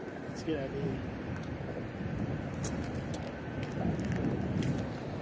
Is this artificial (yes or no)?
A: no